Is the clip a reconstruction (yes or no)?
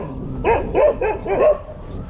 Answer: no